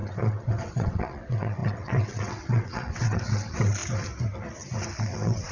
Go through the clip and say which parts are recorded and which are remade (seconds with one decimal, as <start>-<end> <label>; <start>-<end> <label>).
0.0-3.8 remade; 3.8-5.0 recorded; 5.0-5.5 remade